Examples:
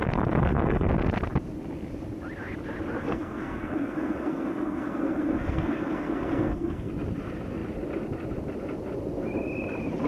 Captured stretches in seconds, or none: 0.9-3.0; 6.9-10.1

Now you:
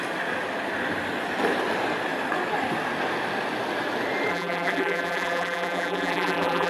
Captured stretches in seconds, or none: 0.0-4.3

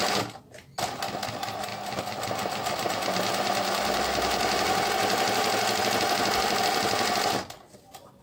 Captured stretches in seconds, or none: 0.0-8.2

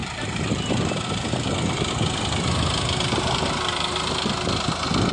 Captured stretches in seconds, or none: 1.9-5.1

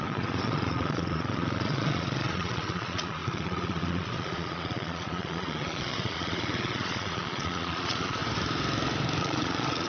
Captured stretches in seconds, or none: 8.2-9.2